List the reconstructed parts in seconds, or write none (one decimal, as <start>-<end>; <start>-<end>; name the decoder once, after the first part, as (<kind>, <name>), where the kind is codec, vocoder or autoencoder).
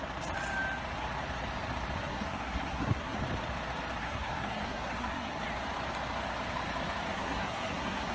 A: 2.1-3.2 (codec, SNAC); 4.0-5.4; 7.1-8.1